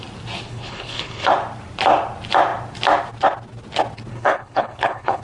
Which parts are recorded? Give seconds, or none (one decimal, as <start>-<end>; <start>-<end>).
0.0-0.5; 1.3-4.1